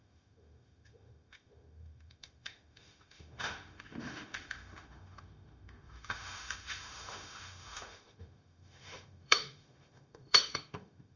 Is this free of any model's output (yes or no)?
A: no